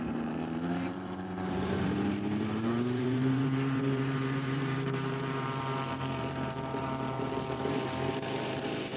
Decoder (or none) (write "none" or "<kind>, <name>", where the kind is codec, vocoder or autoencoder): vocoder, BigVGAN v2